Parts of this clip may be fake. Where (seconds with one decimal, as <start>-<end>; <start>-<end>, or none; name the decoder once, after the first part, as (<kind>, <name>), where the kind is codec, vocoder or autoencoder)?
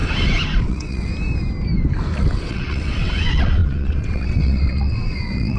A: 0.6-1.1 (vocoder, WaveNeXt); 2.2-5.6